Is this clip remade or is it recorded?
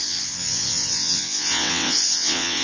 remade